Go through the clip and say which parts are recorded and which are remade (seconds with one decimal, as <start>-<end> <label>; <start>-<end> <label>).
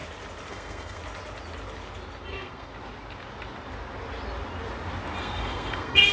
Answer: 0.0-0.5 recorded; 0.5-1.0 remade; 1.0-2.3 recorded; 2.3-2.7 remade; 2.7-5.2 recorded; 5.2-6.1 remade